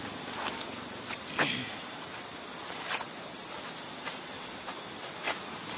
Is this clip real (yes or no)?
yes